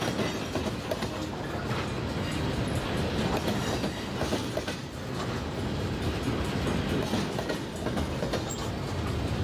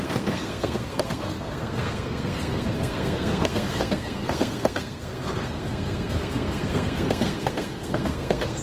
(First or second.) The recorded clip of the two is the first